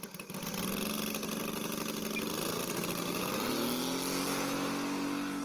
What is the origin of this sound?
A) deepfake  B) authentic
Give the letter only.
B